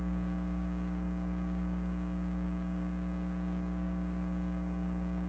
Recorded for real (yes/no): no